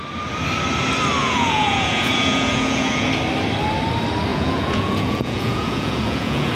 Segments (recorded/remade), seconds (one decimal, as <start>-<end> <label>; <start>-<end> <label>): 0.0-1.2 recorded; 1.2-3.1 remade; 3.1-4.3 recorded; 4.3-6.5 remade